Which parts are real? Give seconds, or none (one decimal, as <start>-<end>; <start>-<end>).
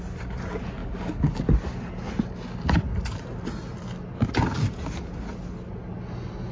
0.0-0.8; 1.4-6.5